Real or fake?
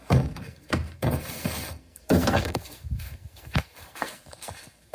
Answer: fake